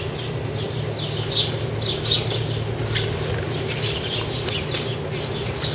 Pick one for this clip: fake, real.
real